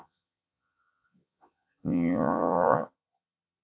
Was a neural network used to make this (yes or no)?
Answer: yes